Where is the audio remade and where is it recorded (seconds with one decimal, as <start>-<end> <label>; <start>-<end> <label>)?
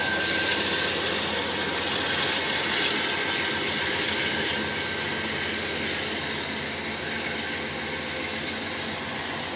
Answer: 0.0-8.5 recorded; 8.5-9.6 remade